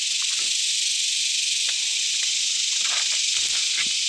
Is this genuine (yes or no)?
yes